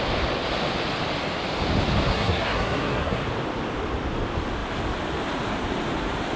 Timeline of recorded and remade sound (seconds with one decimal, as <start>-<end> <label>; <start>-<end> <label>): 0.0-2.1 recorded; 2.1-3.2 remade; 3.2-6.4 recorded